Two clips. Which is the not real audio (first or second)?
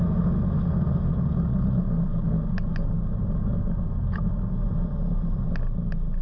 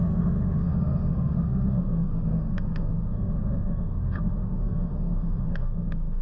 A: second